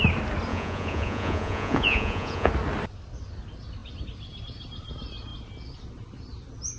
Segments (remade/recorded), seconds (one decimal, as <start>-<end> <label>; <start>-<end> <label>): 0.0-0.5 recorded; 0.5-2.5 remade; 2.5-6.8 recorded